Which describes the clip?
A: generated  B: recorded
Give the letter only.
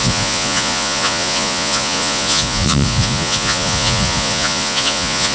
A